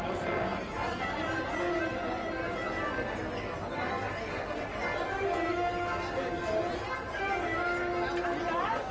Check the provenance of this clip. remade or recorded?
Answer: recorded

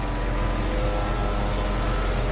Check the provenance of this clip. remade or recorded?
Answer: recorded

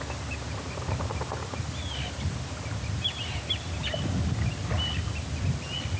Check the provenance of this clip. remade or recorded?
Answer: recorded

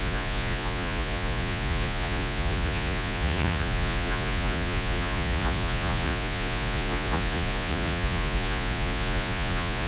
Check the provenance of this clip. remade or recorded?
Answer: remade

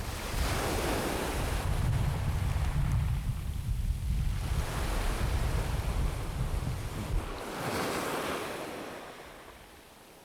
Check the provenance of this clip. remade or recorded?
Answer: recorded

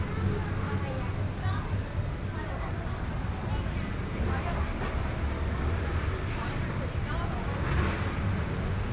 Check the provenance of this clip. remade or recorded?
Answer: recorded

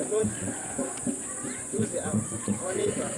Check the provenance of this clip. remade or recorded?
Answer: remade